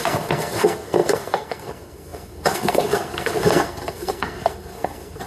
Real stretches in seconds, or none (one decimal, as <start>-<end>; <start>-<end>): none